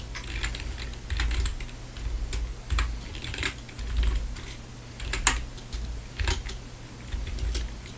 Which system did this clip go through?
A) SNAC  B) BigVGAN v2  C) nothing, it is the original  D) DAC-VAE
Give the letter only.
C